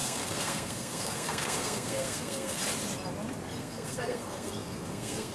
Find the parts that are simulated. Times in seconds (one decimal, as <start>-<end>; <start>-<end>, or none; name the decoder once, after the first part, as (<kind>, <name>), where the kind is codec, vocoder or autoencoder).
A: 0.0-2.6 (codec, SNAC); 3.6-5.3